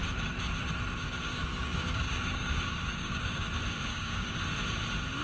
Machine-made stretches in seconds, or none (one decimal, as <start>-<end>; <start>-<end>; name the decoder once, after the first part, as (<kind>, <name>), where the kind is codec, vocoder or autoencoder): 1.3-3.5 (codec, DAC); 3.9-4.4